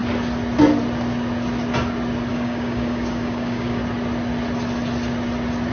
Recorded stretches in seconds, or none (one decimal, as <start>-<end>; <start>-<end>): 0.0-2.3; 3.8-5.7